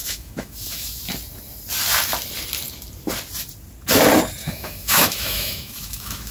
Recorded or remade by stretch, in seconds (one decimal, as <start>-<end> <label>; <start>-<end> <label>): 0.0-1.0 remade; 1.0-4.4 recorded; 4.4-6.3 remade